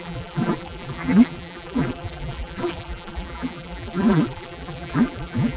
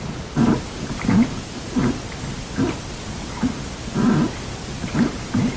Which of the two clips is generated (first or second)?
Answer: first